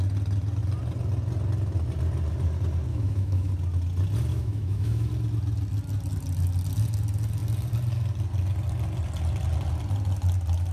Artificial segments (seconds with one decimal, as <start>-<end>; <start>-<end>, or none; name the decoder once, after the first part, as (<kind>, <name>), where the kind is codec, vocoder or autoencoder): 2.9-3.5 (autoencoder, DAC-VAE); 4.3-5.1